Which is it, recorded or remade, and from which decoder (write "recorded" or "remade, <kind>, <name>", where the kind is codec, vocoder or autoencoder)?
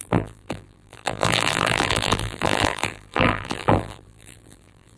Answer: remade, vocoder, BigVGAN v2